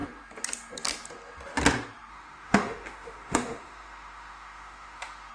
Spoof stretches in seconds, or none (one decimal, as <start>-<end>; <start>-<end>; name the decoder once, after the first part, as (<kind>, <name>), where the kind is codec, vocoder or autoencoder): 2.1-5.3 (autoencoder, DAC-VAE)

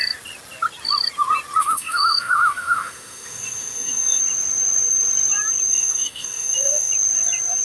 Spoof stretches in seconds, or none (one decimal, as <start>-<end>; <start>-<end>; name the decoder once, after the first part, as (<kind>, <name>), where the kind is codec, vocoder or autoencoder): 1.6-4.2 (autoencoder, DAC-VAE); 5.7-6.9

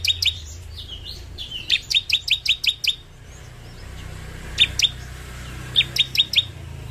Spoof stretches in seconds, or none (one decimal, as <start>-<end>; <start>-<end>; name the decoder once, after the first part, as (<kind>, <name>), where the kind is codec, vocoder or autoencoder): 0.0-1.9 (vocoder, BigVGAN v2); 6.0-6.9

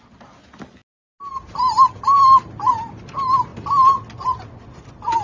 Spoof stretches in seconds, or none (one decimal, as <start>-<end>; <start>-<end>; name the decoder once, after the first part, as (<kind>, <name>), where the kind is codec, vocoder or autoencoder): none

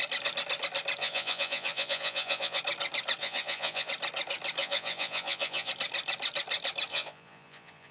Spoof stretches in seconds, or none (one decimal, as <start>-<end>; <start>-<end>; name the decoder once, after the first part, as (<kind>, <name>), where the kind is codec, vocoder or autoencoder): 1.0-2.6 (vocoder, Vocos); 3.2-3.9; 4.6-5.7; 6.9-7.9